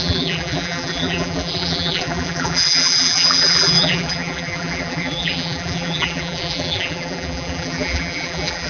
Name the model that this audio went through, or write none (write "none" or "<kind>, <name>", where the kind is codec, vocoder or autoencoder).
vocoder, BigVGAN v2